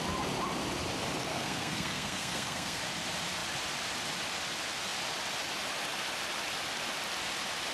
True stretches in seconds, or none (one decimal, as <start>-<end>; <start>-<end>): 0.0-1.3; 2.8-7.7